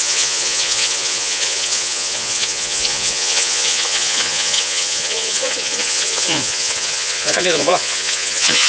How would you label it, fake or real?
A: fake